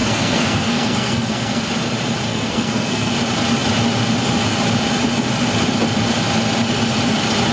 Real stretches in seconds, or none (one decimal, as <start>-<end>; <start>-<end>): 1.6-2.3; 3.1-7.5